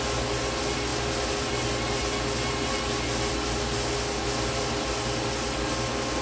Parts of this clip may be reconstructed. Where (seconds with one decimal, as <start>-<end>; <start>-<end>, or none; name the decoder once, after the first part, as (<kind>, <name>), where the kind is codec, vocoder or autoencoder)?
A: none